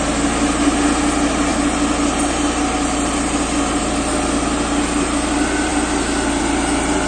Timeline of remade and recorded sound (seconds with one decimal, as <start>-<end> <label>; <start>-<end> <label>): 0.0-7.1 recorded

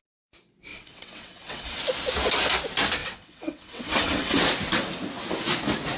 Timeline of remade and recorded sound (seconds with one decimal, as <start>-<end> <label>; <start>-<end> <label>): 0.0-0.7 recorded; 0.7-1.8 remade; 1.8-3.0 recorded; 3.0-4.4 remade; 4.4-6.0 recorded

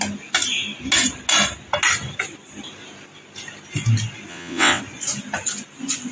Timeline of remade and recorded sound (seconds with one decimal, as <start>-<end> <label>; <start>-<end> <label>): 0.0-4.3 recorded; 4.3-4.8 remade; 4.8-6.1 recorded

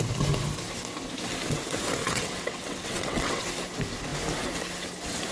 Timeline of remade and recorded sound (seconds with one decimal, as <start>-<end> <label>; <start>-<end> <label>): 0.0-2.0 recorded; 2.0-3.4 remade; 3.4-5.3 recorded

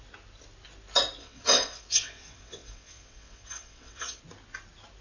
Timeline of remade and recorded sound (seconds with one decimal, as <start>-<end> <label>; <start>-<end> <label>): 0.0-1.2 recorded; 1.2-4.2 remade; 4.2-5.0 recorded

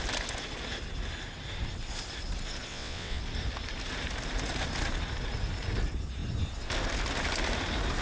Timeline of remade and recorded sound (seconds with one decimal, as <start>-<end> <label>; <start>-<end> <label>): 0.0-2.7 recorded; 2.7-3.2 remade; 3.2-8.0 recorded

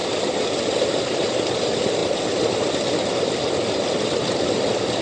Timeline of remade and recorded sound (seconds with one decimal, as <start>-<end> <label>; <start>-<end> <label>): 0.0-5.0 recorded

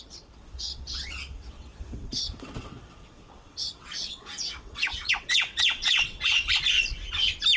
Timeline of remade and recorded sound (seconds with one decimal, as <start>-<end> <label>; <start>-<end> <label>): 0.0-6.5 remade; 6.5-7.6 recorded